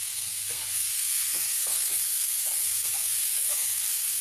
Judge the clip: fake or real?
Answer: fake